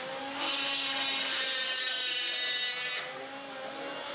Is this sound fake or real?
real